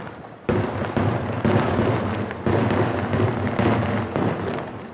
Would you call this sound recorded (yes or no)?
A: yes